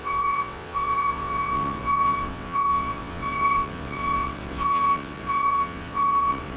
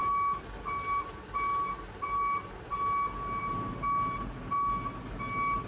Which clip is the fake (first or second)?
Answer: first